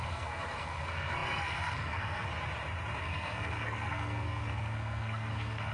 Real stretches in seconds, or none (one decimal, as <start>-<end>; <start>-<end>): 2.3-3.0